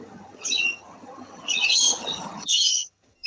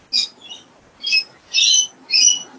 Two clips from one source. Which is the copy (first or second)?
first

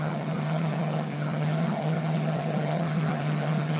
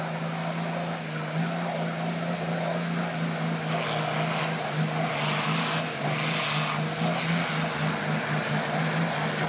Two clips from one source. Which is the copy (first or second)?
first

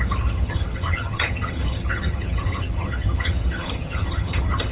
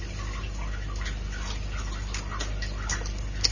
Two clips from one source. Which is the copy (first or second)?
first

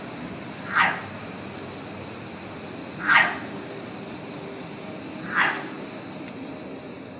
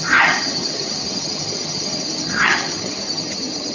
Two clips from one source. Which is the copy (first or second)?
second